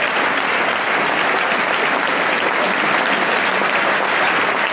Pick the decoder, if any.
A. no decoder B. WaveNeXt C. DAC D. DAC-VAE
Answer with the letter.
A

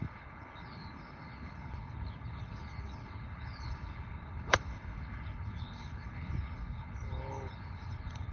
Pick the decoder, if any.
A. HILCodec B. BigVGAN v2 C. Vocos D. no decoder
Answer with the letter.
A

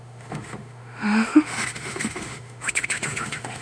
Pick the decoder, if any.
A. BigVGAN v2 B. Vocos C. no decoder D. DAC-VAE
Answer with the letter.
D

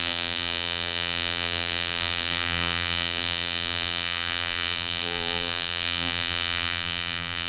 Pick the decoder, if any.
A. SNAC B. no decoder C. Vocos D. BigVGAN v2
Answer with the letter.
D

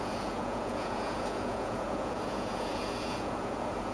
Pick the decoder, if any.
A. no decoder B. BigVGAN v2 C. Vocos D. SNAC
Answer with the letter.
C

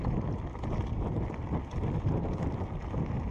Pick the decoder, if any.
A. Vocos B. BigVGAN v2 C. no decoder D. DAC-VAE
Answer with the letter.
C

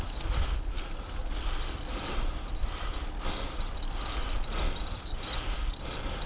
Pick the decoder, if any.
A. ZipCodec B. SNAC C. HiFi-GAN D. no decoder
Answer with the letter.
D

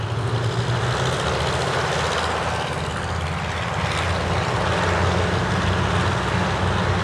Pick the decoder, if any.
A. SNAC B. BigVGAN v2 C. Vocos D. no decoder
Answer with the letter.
D